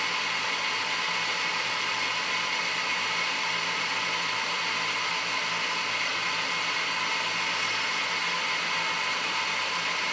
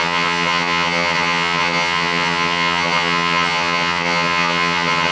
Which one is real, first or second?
first